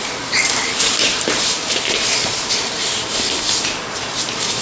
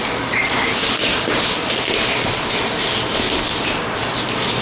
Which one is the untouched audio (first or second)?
second